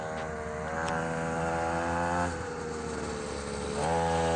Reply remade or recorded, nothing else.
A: recorded